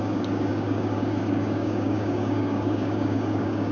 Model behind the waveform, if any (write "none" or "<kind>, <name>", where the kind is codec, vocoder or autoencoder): codec, DAC